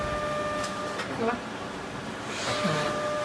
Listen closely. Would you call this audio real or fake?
real